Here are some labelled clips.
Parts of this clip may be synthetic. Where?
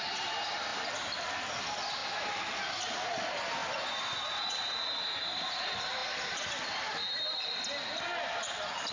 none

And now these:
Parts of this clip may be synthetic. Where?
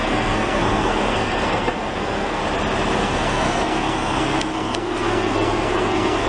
0.0-2.4 (codec, SNAC); 3.0-6.3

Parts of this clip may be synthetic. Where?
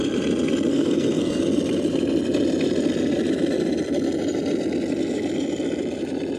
0.7-1.4 (codec, SNAC)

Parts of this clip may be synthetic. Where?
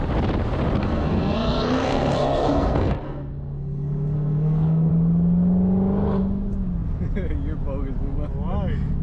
0.8-4.9 (codec, SNAC)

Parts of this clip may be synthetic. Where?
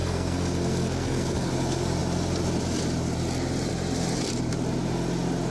0.0-1.5 (codec, SNAC)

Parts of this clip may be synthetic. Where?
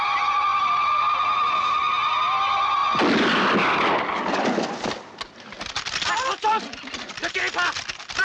none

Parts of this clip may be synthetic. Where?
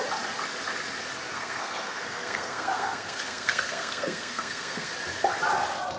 1.3-4.9 (codec, SNAC)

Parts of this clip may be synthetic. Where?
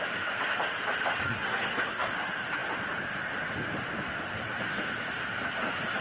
1.3-2.1 (codec, SNAC)